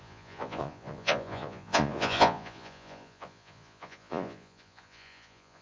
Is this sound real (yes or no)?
no